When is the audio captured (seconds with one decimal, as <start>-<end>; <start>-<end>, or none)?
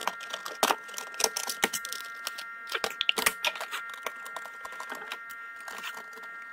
0.0-6.5